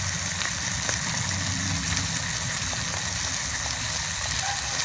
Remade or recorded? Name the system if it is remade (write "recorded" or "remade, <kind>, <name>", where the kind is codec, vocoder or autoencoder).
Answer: recorded